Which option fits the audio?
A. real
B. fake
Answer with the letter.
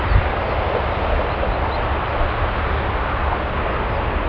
A